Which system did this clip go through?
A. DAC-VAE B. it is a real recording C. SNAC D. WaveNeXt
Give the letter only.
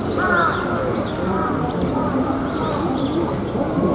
B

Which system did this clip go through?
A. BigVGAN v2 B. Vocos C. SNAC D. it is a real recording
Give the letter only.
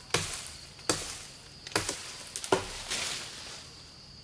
D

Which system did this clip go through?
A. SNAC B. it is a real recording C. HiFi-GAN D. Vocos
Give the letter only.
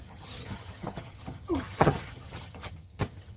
C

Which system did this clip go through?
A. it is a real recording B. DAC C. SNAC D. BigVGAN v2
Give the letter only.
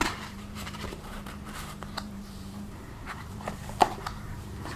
D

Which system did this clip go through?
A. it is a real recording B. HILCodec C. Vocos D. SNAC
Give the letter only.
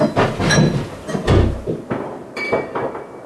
A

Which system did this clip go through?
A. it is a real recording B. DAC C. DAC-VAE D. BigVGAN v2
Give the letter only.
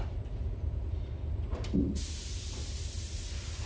A